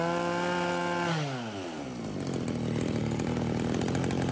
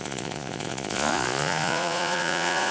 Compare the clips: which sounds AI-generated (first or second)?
second